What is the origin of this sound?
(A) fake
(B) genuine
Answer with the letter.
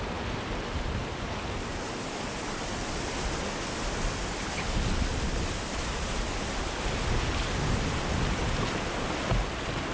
B